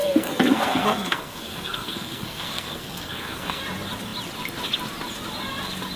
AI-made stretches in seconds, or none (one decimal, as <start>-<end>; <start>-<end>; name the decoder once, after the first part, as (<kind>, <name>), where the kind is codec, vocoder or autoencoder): 0.0-3.6 (codec, SNAC)